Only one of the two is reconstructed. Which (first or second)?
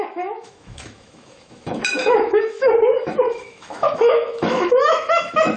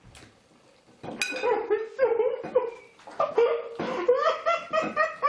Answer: first